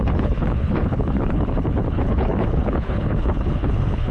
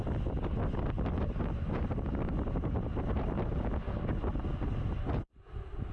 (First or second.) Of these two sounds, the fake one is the first